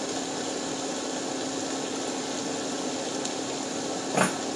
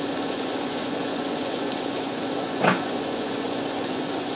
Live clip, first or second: first